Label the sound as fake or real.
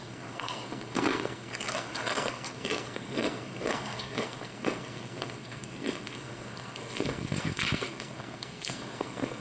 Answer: fake